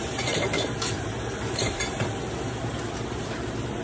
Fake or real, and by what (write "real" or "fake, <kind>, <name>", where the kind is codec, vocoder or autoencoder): fake, vocoder, BigVGAN v2